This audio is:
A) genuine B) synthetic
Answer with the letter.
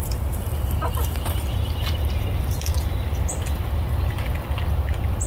A